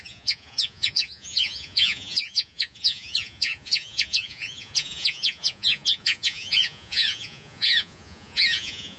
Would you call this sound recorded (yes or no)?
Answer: no